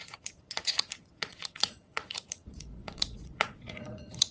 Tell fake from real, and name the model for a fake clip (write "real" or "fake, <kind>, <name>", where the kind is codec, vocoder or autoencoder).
fake, vocoder, Vocos